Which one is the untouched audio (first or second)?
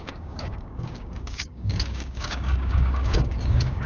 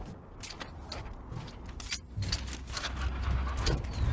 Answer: second